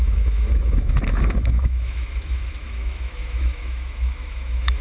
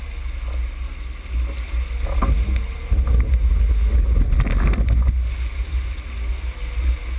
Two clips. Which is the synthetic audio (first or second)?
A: first